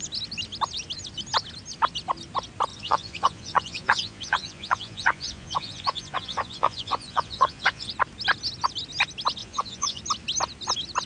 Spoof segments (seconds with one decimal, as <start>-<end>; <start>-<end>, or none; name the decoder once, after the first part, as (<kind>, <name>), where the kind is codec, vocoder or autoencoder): 2.7-7.9 (vocoder, Vocos); 9.4-10.0